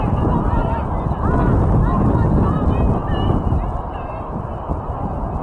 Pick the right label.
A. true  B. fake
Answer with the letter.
A